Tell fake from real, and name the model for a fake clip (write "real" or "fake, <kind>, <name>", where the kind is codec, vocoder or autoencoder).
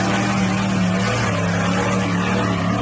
real